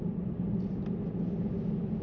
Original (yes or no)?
yes